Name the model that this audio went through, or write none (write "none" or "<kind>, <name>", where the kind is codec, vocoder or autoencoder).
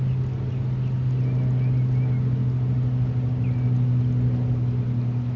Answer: none